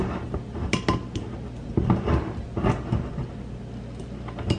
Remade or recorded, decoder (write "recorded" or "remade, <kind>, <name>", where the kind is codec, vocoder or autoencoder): recorded